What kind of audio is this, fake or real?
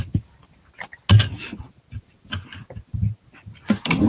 real